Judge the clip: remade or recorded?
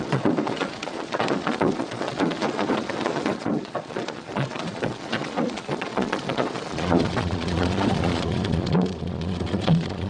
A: remade